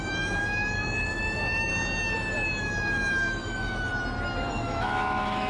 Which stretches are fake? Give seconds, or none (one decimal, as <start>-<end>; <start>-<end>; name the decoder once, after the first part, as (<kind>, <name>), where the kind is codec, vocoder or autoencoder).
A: 0.0-1.7 (autoencoder, DAC-VAE); 2.6-3.9; 4.5-5.5